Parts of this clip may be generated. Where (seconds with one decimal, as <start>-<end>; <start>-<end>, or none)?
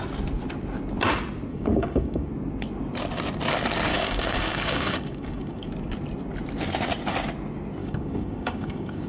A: 1.5-2.3; 3.9-5.7; 7.8-9.1